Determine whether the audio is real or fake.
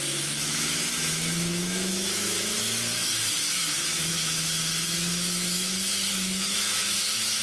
fake